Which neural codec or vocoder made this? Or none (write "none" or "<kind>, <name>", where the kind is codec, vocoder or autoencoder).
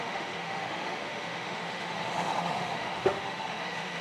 autoencoder, DAC-VAE